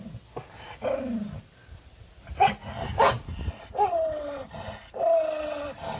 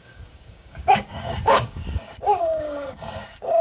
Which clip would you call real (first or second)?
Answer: first